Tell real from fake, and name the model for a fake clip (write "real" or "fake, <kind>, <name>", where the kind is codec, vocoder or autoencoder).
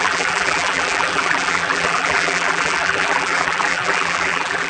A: fake, vocoder, BigVGAN v2